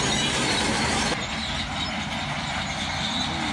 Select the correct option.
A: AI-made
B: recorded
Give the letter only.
B